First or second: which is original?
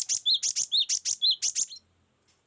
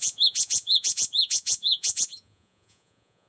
first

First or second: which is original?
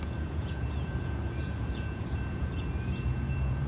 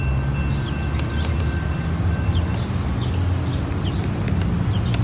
second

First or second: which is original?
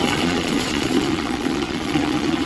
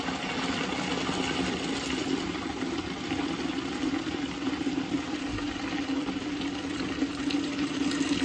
second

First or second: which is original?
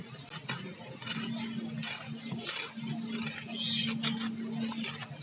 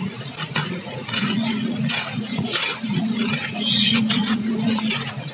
first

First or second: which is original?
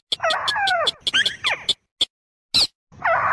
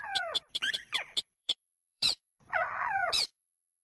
first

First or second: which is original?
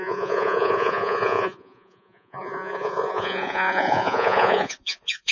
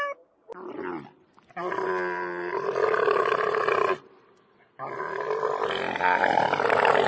second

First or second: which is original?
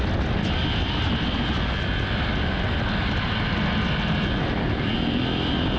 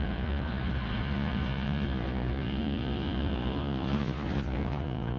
first